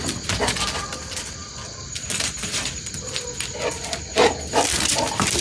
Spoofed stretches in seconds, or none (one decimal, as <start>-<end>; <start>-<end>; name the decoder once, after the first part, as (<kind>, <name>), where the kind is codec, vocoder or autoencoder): none